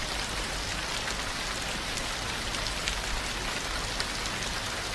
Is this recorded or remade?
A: recorded